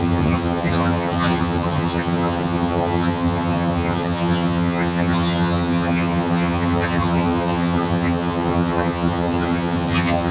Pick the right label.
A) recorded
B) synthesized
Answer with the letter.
B